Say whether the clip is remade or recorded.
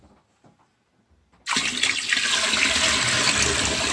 recorded